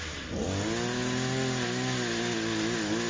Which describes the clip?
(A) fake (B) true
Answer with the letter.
B